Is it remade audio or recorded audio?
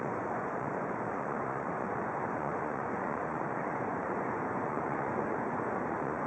remade